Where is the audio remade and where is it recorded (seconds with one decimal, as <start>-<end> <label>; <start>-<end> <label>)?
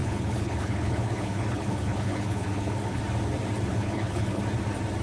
0.0-3.0 remade; 3.0-3.7 recorded; 3.7-4.4 remade; 4.4-5.0 recorded